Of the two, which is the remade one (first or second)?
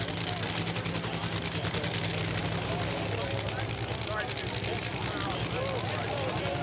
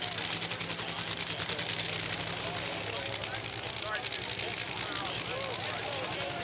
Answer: first